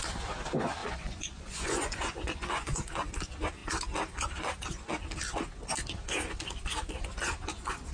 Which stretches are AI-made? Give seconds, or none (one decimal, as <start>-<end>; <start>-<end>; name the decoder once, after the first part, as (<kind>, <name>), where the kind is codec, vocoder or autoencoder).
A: 0.8-2.9 (vocoder, Vocos)